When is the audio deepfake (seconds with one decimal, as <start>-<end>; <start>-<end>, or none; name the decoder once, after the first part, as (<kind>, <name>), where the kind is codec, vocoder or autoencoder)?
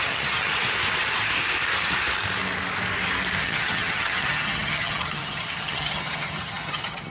0.0-0.5 (vocoder, HiFi-GAN); 3.4-7.1